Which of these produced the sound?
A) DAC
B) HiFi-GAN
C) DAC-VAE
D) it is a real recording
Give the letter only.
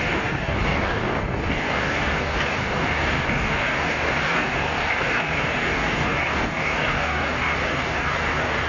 A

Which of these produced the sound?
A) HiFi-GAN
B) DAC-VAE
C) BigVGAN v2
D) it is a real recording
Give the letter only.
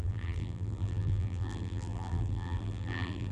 C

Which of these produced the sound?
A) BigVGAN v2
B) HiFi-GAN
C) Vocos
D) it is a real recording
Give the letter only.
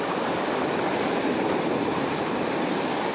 A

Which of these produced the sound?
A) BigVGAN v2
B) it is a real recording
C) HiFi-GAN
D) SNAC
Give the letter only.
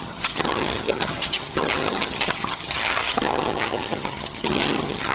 C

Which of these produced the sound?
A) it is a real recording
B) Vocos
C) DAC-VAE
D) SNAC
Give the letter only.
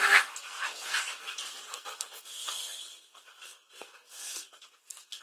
D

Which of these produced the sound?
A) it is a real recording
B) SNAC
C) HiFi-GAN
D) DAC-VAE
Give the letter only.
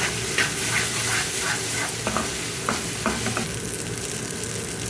A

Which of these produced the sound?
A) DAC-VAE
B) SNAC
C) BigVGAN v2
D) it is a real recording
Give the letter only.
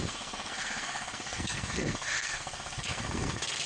B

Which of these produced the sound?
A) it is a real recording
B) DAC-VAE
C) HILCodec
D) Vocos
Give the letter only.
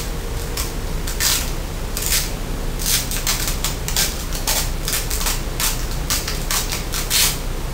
A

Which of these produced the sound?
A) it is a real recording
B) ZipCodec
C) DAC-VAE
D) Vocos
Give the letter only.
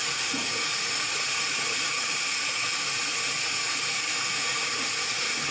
D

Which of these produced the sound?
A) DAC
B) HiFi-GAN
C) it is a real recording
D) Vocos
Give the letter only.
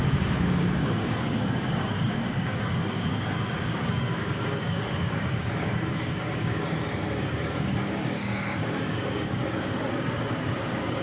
A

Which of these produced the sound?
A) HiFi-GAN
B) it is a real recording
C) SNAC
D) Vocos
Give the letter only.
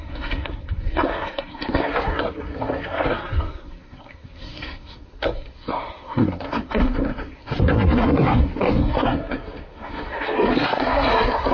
C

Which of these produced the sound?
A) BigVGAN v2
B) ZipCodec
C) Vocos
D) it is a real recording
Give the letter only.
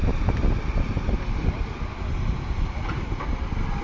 D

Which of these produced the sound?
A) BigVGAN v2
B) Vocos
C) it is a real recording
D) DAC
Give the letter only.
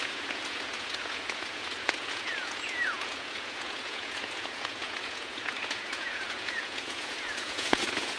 B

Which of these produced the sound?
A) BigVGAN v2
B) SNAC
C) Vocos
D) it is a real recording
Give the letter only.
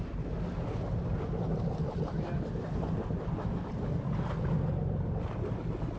D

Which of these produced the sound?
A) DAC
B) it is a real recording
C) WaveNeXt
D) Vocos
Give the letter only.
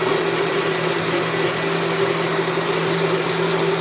B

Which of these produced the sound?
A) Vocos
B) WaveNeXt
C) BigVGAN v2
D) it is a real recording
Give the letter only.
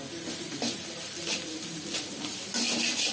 D